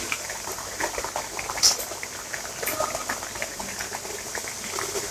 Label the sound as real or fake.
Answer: real